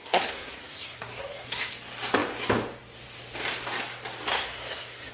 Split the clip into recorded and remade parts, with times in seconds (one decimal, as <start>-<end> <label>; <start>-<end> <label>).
0.0-1.7 remade; 1.7-4.3 recorded; 4.3-5.1 remade